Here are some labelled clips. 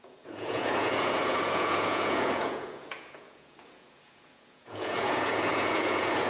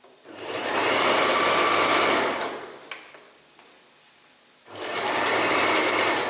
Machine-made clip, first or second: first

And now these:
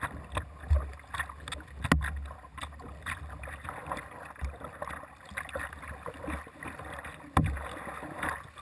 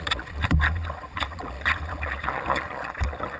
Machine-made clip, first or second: second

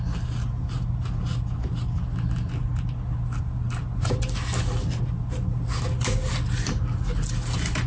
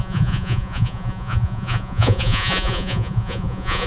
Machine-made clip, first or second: second